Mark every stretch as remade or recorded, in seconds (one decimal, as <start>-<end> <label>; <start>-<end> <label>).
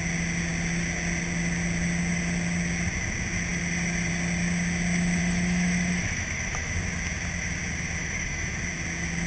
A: 0.0-5.2 recorded; 5.2-6.7 remade; 6.7-8.0 recorded; 8.0-8.6 remade; 8.6-9.3 recorded